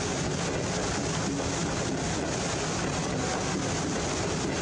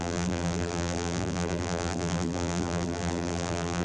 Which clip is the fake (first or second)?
second